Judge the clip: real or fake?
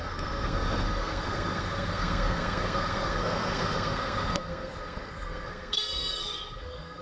fake